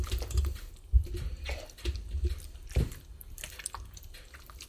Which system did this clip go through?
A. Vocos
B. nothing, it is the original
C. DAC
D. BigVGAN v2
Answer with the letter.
B